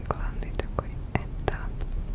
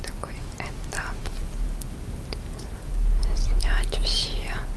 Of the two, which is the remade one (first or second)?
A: second